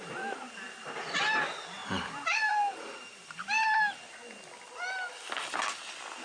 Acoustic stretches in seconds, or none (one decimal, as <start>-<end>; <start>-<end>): 0.0-6.2